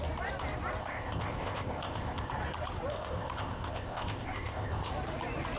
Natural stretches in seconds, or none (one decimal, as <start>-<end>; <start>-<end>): 0.0-0.8; 2.3-2.9; 4.9-5.6